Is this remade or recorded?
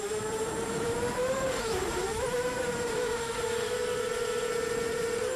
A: remade